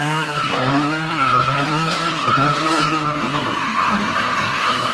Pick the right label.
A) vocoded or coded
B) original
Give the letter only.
A